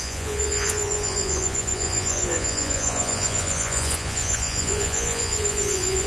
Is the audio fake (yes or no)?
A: yes